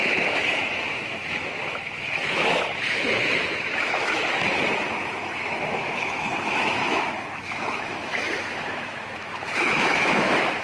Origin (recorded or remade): remade